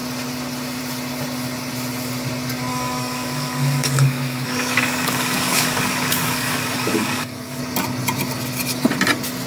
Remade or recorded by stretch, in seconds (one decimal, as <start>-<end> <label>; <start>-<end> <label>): 0.0-2.7 recorded; 2.7-7.6 remade; 7.6-9.5 recorded